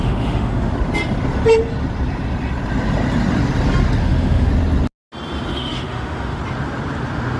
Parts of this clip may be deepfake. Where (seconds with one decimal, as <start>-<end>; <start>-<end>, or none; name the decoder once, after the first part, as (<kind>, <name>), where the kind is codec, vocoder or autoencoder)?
0.0-0.7 (autoencoder, DAC-VAE); 4.0-4.5; 5.5-6.4